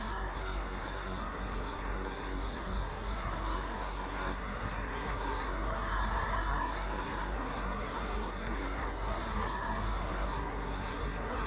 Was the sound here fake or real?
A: fake